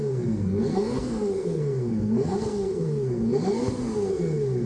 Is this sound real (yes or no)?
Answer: no